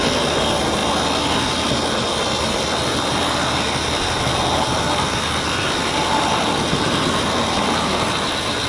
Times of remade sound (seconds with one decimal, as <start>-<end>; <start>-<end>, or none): none